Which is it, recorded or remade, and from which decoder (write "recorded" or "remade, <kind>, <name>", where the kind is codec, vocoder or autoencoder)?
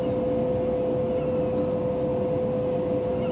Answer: recorded